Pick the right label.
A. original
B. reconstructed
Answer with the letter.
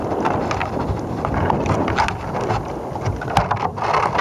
A